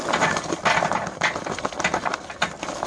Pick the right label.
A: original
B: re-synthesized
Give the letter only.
A